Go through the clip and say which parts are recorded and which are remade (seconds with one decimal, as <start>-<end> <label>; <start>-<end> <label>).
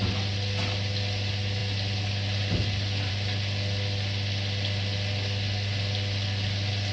0.0-6.9 recorded